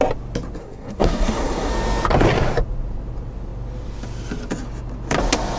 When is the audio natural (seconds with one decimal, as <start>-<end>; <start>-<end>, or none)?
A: 0.0-0.6; 1.7-5.6